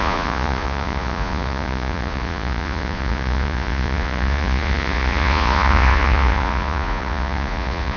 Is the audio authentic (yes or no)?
no